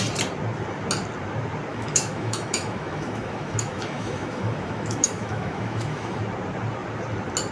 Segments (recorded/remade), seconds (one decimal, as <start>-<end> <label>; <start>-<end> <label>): 0.0-1.7 recorded; 1.7-6.2 remade; 6.2-7.5 recorded